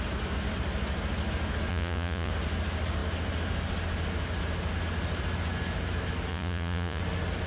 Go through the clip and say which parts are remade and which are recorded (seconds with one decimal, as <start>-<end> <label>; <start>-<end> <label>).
0.0-1.7 recorded; 1.7-2.3 remade; 2.3-6.3 recorded; 6.3-7.0 remade; 7.0-7.5 recorded